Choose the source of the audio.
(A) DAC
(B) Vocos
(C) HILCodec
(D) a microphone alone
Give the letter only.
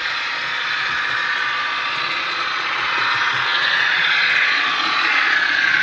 B